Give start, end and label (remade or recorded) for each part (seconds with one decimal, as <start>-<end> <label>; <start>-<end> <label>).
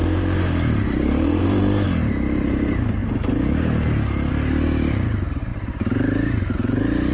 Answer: 0.0-1.6 remade; 1.6-5.5 recorded; 5.5-6.4 remade; 6.4-7.1 recorded